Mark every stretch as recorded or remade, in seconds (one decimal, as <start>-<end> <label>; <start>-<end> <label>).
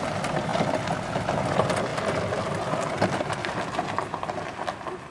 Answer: 0.0-5.1 recorded